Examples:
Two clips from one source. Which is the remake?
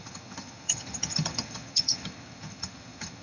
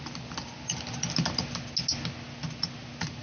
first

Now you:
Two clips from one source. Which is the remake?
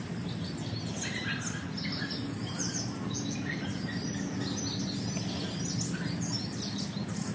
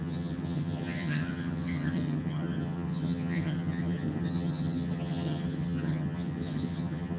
second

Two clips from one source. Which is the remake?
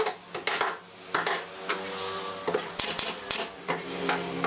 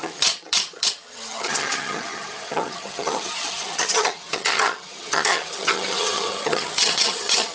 second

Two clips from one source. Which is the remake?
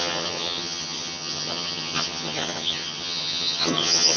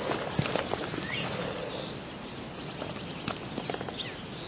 first